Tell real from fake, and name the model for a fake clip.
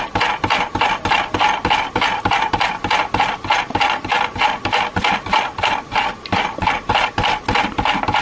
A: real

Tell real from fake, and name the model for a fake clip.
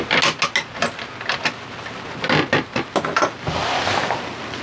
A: real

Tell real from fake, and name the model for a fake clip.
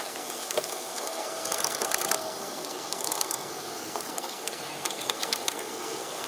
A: fake, codec, SNAC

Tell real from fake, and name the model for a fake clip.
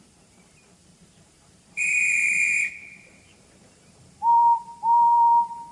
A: fake, vocoder, BigVGAN v2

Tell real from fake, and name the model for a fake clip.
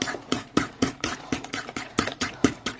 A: fake, vocoder, Vocos